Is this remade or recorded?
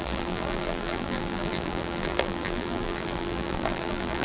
remade